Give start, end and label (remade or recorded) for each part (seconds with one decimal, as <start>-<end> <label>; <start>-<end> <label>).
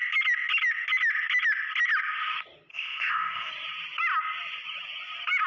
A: 0.0-2.7 recorded; 2.7-3.5 remade; 3.5-5.5 recorded